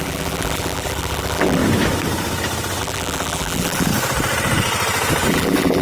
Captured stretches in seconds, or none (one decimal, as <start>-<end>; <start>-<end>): 1.6-2.8; 3.9-5.3